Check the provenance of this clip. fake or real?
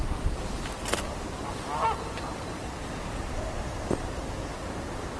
real